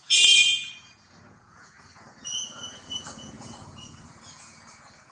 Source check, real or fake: fake